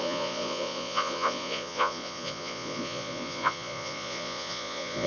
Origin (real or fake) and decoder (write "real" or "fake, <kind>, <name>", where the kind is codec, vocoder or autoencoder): fake, vocoder, Vocos